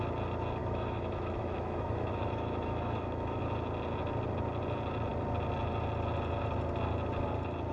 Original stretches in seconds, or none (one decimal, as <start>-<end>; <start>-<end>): 0.0-0.6; 3.4-7.7